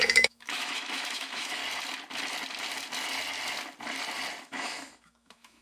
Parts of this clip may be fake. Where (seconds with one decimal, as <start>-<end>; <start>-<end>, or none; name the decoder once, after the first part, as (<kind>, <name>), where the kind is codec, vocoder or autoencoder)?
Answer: 0.0-1.6 (autoencoder, DAC-VAE); 4.4-5.6